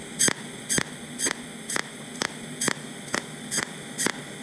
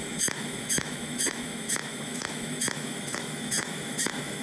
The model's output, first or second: second